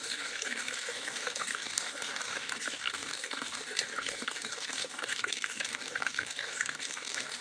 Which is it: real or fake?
fake